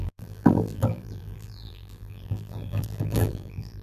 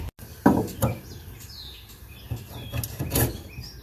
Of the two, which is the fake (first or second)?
first